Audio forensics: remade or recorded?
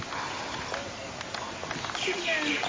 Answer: recorded